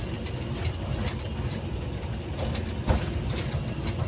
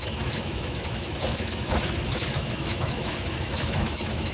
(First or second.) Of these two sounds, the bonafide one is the first